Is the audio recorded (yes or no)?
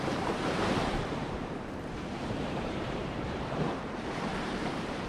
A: no